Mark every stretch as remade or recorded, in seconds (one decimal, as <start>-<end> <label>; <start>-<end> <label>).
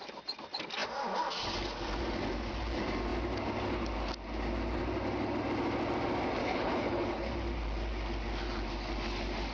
0.0-6.4 recorded; 6.4-7.3 remade; 7.3-9.5 recorded